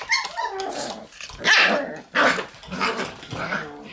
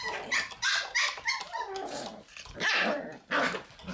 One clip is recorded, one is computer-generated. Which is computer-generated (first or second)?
second